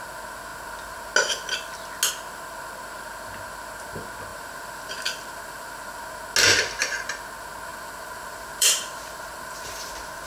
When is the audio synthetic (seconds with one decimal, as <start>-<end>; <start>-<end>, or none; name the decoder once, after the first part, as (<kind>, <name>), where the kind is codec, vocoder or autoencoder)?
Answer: 4.3-6.0 (vocoder, BigVGAN v2); 7.7-9.9